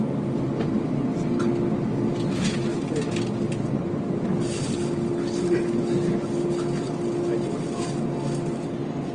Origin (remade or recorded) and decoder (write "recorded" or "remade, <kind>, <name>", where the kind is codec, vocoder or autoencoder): recorded